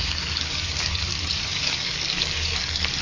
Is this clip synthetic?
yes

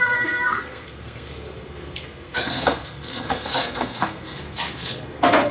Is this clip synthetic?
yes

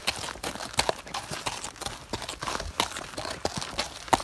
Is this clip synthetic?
no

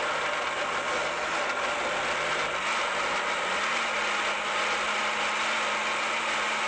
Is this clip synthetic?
no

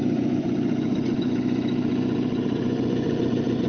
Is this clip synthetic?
yes